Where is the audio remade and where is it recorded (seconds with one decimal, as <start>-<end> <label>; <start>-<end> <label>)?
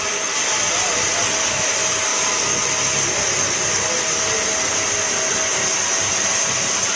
0.0-7.0 recorded